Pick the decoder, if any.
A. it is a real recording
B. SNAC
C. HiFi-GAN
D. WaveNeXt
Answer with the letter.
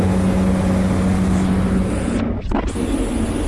A